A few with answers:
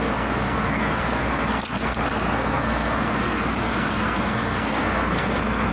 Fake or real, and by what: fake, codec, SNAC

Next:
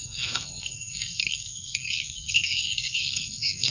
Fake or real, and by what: fake, codec, SNAC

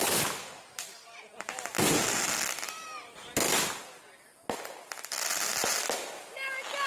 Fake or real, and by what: real